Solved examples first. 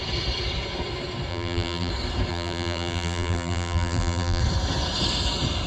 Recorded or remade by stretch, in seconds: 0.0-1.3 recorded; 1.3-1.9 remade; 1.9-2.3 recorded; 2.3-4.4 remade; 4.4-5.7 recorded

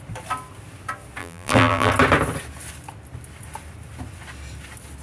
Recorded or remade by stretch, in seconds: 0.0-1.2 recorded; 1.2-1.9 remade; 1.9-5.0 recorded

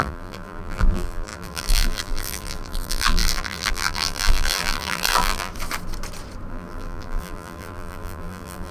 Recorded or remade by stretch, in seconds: 0.0-5.5 remade; 5.5-6.5 recorded; 6.5-8.7 remade

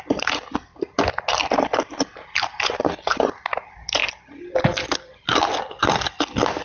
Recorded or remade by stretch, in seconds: 0.0-0.7 remade; 0.7-1.6 recorded; 1.6-4.0 remade; 4.0-5.4 recorded; 5.4-6.6 remade

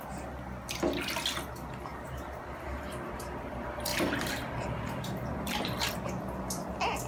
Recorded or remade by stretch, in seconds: 0.0-1.9 recorded; 1.9-3.5 remade; 3.5-3.9 recorded; 3.9-5.9 remade; 5.9-7.1 recorded